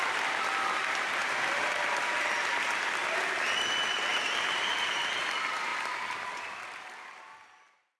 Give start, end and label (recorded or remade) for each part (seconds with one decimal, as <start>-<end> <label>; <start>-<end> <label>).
0.0-1.2 recorded; 1.2-2.3 remade; 2.3-4.1 recorded; 4.1-5.0 remade; 5.0-8.0 recorded